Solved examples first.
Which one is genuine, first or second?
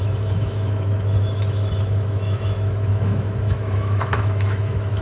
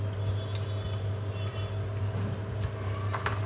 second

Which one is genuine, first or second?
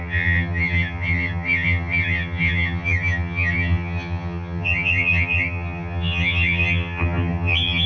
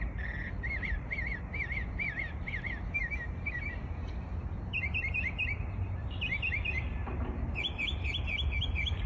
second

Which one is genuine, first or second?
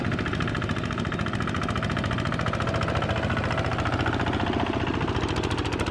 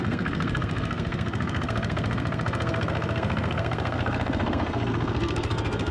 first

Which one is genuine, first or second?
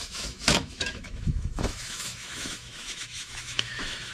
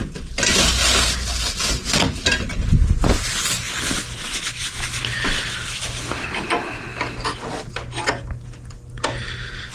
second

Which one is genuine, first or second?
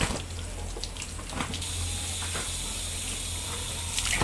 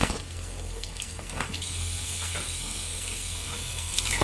first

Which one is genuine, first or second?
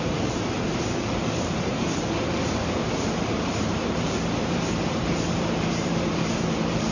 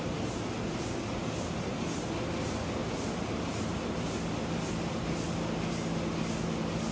second